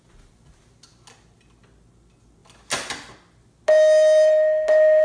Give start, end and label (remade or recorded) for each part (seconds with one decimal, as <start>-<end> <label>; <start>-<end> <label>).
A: 0.0-5.0 recorded